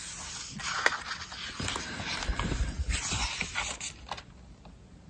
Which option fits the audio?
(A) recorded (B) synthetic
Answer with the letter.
A